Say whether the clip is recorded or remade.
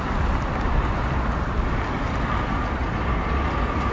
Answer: recorded